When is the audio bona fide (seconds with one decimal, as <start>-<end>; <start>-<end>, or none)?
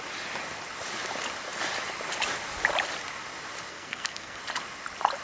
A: 0.0-3.7; 4.4-5.2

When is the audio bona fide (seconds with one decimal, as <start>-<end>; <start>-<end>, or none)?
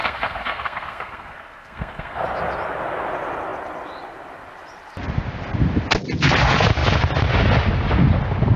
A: 2.2-8.6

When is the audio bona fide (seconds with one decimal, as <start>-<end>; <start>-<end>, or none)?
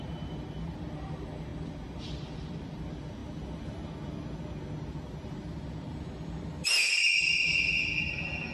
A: 0.0-8.5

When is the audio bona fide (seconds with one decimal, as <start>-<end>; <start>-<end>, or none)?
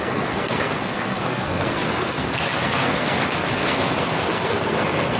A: none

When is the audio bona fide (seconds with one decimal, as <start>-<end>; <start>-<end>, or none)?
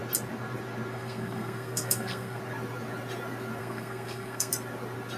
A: 0.0-0.9; 2.4-3.6; 4.5-5.2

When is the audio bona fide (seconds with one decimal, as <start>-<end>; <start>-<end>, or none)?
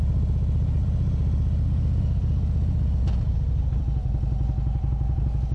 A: 0.0-5.5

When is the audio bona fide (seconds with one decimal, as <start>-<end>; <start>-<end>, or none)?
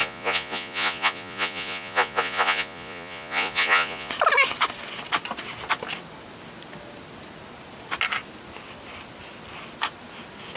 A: 4.1-10.6